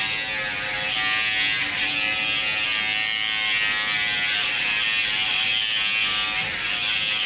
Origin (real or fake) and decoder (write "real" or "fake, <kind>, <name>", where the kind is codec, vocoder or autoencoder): real